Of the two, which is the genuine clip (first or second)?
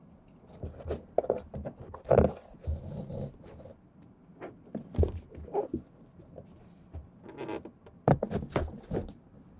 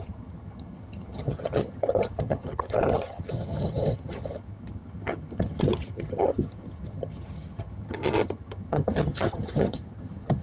first